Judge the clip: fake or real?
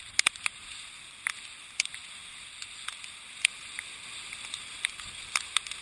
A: real